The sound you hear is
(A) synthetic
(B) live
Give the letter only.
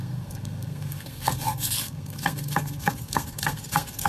A